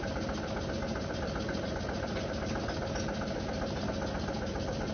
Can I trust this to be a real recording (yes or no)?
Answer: yes